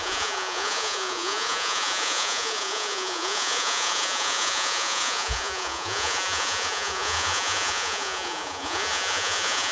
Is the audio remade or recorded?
remade